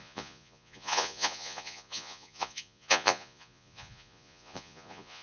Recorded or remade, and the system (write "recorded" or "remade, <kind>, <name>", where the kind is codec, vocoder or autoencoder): remade, vocoder, Vocos